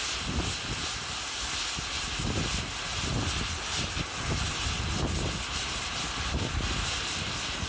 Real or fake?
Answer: real